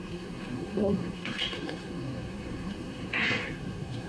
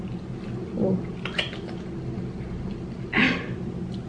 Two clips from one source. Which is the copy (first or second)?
first